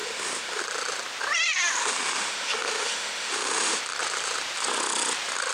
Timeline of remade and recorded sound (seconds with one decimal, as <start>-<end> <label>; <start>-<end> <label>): 0.0-0.6 remade; 0.6-1.8 recorded; 1.8-3.8 remade; 3.8-5.5 recorded